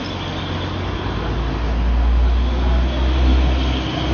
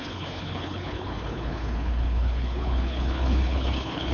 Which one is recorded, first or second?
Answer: first